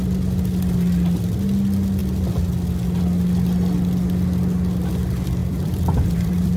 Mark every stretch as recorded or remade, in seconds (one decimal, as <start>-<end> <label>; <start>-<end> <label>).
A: 0.0-5.4 recorded; 5.4-6.6 remade